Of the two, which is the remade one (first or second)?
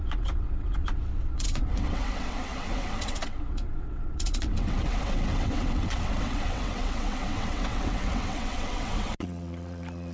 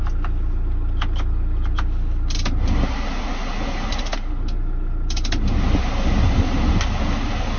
first